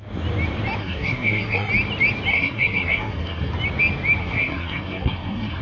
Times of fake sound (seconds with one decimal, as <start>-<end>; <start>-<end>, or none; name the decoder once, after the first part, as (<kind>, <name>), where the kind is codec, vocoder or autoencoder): 0.8-1.7 (codec, SNAC); 2.3-3.5; 4.2-5.6